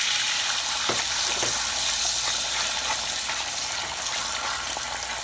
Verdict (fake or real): fake